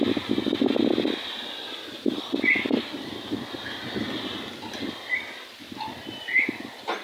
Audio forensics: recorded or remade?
recorded